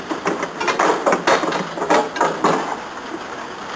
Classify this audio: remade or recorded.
recorded